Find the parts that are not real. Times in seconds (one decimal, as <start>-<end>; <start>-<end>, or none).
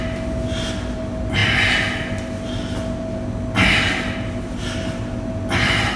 none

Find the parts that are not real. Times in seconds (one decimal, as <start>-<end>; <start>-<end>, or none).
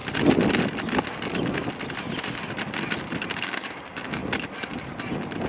3.3-4.2